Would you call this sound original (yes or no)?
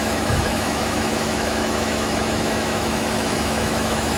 no